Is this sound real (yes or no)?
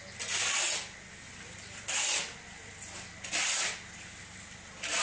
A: yes